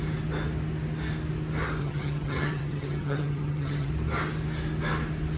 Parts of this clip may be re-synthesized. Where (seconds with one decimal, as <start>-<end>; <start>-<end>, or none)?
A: 1.8-3.9